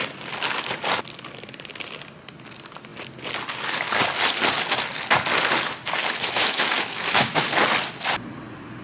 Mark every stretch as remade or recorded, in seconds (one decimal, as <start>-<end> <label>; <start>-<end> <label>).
0.0-6.0 recorded; 6.0-7.5 remade; 7.5-8.8 recorded